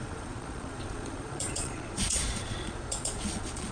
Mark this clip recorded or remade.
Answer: remade